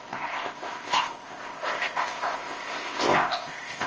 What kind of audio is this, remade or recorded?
remade